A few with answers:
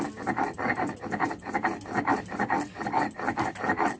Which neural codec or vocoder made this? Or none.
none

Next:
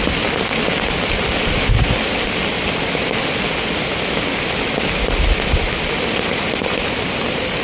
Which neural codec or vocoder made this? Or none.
none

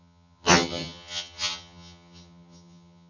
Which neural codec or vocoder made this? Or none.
vocoder, HiFi-GAN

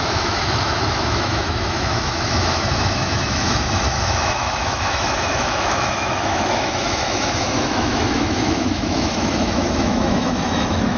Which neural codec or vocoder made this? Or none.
autoencoder, DAC-VAE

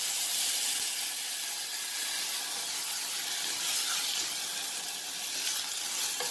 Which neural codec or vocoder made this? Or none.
none